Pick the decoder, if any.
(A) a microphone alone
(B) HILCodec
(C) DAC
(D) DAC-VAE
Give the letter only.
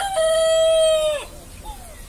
A